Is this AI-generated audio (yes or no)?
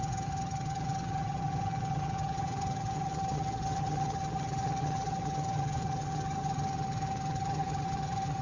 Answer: yes